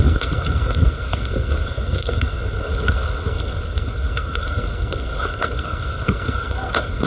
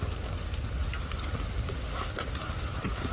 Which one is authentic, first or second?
second